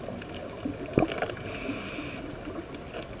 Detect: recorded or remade recorded